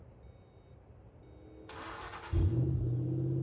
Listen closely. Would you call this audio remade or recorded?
recorded